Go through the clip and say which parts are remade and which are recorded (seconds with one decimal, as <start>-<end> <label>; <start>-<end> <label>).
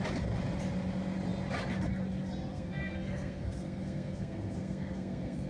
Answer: 0.0-2.5 recorded; 2.5-5.5 remade